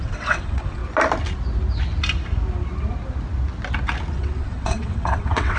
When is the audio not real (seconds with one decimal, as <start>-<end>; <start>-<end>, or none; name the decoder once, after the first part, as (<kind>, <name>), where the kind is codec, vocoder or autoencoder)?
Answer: 0.0-0.8 (vocoder, WaveNeXt); 4.1-5.6